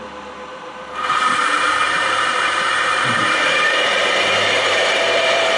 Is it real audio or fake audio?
fake